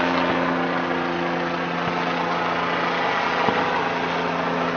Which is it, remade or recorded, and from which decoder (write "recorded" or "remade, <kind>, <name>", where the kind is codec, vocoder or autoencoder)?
recorded